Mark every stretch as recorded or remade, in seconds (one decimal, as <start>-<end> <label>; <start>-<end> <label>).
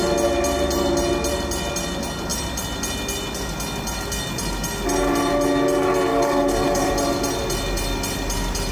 0.0-6.1 recorded; 6.1-6.9 remade; 6.9-8.7 recorded